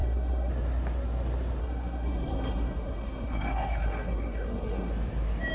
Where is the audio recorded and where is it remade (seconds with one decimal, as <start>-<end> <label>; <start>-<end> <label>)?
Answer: 0.0-0.5 remade; 0.5-1.6 recorded; 1.6-4.9 remade; 4.9-5.5 recorded